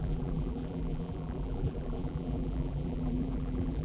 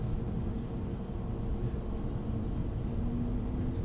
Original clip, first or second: second